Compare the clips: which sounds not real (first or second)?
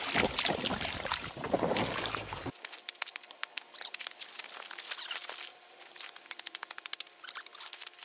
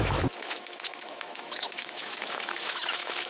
second